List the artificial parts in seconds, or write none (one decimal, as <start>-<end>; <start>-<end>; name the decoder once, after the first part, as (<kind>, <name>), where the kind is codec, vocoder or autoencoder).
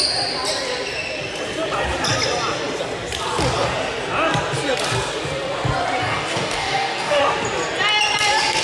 6.0-7.2 (codec, DAC)